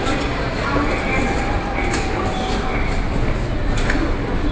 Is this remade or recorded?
recorded